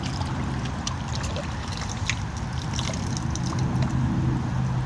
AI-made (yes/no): no